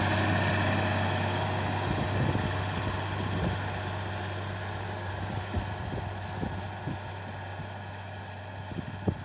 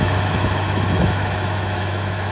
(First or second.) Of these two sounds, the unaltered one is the first